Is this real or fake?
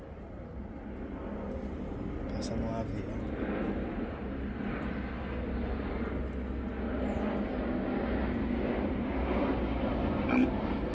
real